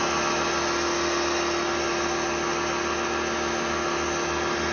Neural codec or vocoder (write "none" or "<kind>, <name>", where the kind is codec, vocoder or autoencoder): none